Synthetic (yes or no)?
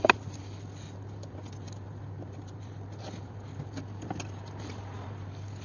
yes